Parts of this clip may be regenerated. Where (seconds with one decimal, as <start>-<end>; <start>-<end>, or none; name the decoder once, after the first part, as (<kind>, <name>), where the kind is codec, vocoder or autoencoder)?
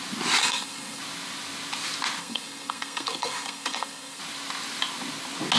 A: 0.4-1.0 (codec, SNAC); 2.2-4.2